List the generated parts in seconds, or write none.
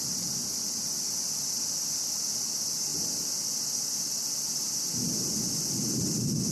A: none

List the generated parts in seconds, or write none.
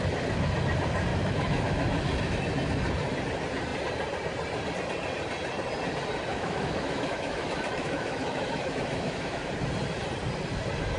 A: 1.1-2.4; 6.3-9.5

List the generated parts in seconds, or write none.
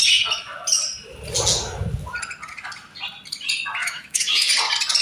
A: 3.8-4.5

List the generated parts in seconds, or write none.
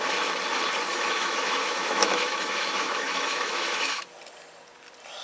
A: 0.9-4.0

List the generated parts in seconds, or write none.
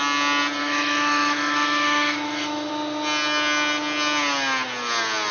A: 0.6-2.7